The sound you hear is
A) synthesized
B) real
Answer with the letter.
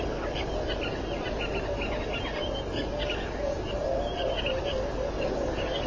B